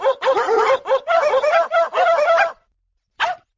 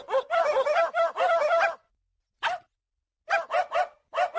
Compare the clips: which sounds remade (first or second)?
first